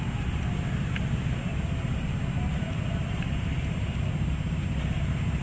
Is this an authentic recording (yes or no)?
yes